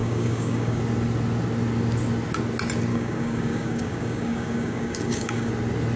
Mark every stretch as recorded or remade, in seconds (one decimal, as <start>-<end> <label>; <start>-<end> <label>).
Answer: 0.0-0.8 remade; 0.8-2.9 recorded; 2.9-5.5 remade; 5.5-6.0 recorded